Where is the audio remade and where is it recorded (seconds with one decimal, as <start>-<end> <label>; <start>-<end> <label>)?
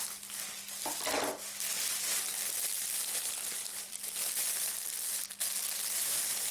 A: 0.0-3.6 recorded; 3.6-5.1 remade; 5.1-6.5 recorded